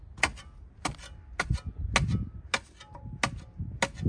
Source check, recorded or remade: recorded